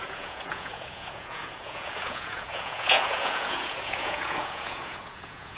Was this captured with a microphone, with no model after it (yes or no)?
no